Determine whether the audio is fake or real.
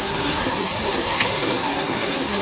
fake